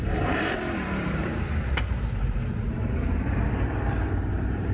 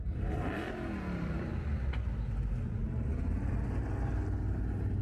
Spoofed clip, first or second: first